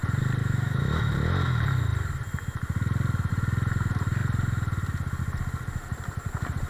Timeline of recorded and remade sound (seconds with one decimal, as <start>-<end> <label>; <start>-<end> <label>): 0.0-0.4 recorded; 0.4-1.1 remade; 1.1-6.7 recorded